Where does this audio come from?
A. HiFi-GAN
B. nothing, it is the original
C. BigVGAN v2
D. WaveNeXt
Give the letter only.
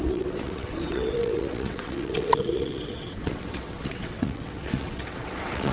D